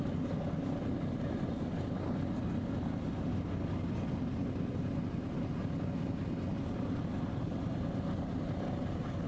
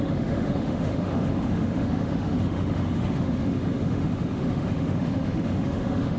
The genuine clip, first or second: first